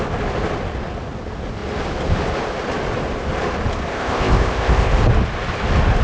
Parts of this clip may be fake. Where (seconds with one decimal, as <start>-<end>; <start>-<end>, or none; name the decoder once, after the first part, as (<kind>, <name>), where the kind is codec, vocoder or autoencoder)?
3.9-4.9 (codec, ZipCodec)